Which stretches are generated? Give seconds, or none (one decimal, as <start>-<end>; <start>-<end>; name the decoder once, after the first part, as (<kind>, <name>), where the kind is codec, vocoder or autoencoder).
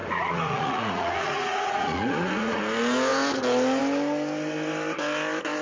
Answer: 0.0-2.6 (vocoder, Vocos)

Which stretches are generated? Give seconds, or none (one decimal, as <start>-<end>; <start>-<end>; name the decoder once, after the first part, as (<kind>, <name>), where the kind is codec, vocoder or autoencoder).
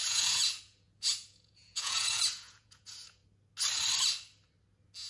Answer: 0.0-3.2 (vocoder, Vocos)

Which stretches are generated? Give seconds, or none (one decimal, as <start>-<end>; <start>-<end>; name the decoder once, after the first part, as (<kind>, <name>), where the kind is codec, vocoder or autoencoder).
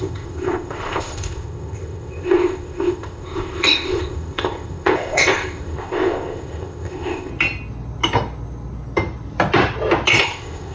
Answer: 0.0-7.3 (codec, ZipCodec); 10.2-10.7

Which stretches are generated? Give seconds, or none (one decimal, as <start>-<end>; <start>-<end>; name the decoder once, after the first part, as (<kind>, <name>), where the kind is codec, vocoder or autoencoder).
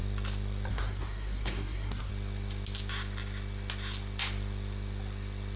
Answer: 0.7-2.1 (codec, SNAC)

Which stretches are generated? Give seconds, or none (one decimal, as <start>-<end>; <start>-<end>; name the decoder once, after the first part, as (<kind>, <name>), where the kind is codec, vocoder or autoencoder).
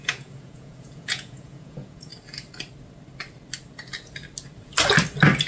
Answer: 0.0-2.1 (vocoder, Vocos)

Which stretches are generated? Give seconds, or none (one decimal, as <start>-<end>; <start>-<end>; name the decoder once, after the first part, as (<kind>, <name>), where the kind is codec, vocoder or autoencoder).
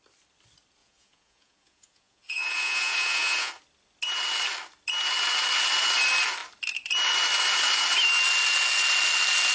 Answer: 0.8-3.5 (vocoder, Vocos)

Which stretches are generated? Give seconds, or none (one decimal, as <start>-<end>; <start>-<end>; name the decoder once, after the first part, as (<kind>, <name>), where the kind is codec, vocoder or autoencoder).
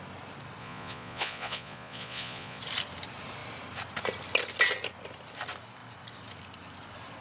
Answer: 0.6-2.6 (vocoder, Vocos)